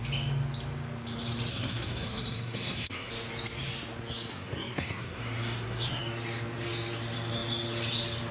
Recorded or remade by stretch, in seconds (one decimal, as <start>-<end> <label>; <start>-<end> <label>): 0.0-1.5 recorded; 1.5-3.1 remade; 3.1-4.3 recorded; 4.3-6.0 remade; 6.0-8.3 recorded